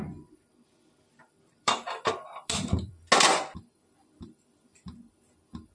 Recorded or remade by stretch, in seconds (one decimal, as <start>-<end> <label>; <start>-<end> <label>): 0.0-0.5 recorded; 0.5-2.5 remade; 2.5-5.7 recorded